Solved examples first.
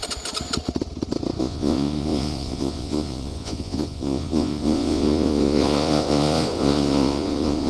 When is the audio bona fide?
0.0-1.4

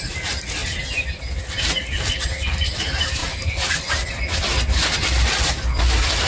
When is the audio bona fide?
0.0-6.3

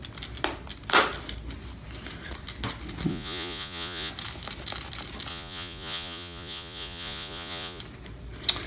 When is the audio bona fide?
0.0-3.1; 4.1-5.3; 7.8-8.7

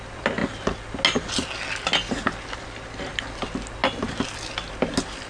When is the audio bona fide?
0.0-5.3

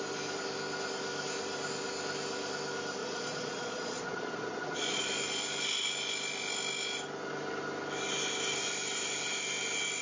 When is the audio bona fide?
0.0-3.0; 5.0-10.0

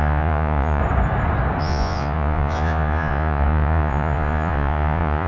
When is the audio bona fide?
0.8-1.6

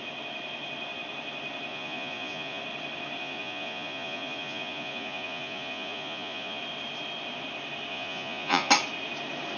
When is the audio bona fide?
0.0-1.7; 2.6-3.2; 6.6-7.9; 8.7-9.6